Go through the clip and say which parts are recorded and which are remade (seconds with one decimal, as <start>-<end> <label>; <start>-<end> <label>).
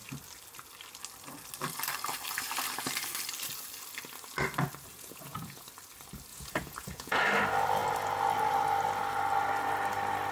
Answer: 0.0-4.9 recorded; 4.9-5.7 remade; 5.7-6.3 recorded; 6.3-7.2 remade; 7.2-10.3 recorded